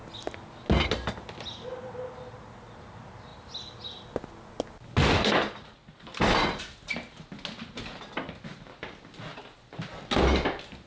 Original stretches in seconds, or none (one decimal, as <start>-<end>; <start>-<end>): 0.0-10.9